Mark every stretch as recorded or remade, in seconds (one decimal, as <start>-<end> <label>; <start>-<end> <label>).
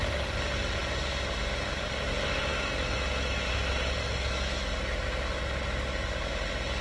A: 0.0-2.5 recorded; 2.5-3.5 remade; 3.5-4.0 recorded; 4.0-5.4 remade; 5.4-6.8 recorded